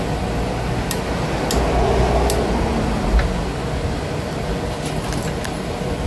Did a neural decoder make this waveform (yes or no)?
no